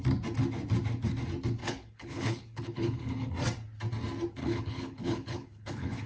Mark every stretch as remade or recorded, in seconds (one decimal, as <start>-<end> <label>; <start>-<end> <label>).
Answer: 0.0-1.6 recorded; 1.6-3.3 remade; 3.3-4.4 recorded; 4.4-6.1 remade